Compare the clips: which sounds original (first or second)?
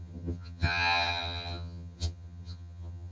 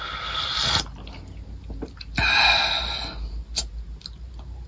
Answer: second